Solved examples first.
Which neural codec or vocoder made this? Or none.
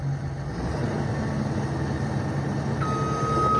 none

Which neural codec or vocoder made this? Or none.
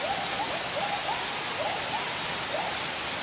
none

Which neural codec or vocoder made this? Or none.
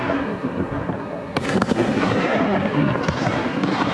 codec, SNAC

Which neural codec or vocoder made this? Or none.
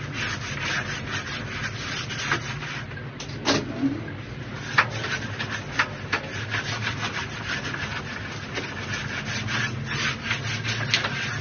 none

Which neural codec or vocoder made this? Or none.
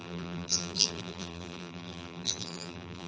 vocoder, BigVGAN v2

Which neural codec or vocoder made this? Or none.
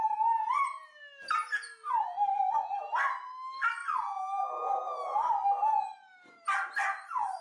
none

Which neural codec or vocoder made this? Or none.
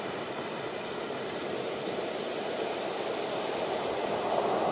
none